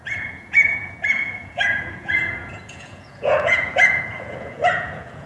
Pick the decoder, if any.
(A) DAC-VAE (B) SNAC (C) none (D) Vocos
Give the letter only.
D